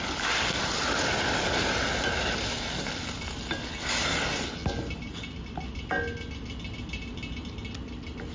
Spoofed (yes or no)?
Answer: no